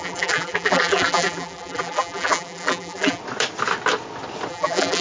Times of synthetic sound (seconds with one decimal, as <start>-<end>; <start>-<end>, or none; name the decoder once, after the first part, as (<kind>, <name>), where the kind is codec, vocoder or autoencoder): 0.0-3.2 (vocoder, BigVGAN v2); 4.5-5.0